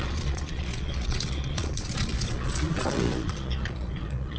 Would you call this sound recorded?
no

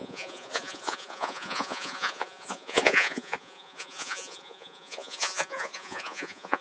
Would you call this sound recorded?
no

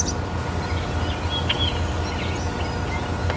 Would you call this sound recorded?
yes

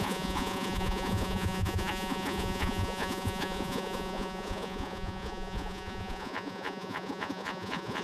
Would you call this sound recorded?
no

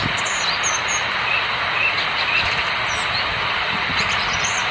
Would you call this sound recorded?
yes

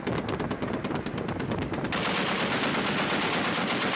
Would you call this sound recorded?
yes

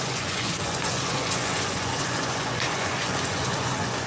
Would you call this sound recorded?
no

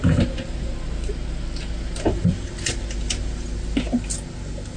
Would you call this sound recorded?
yes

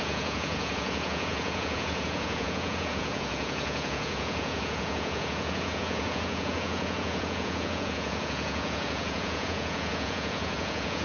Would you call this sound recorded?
no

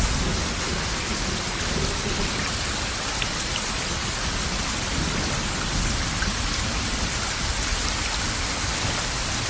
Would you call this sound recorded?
yes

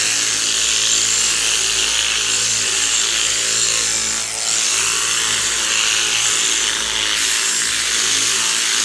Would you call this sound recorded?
yes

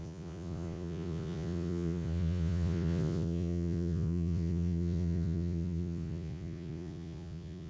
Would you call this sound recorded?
no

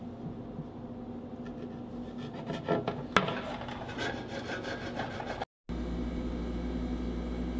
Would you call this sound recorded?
yes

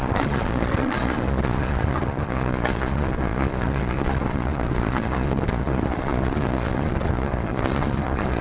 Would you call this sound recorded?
no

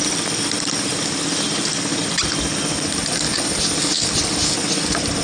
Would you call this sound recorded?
yes